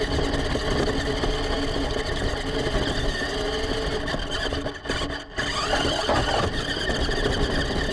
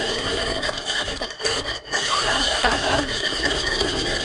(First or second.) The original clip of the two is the first